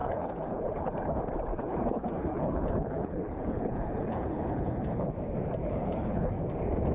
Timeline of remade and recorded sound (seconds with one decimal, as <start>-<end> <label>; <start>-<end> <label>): 0.0-0.9 remade; 0.9-1.5 recorded; 1.5-5.1 remade; 5.1-5.6 recorded; 5.6-6.4 remade; 6.4-6.9 recorded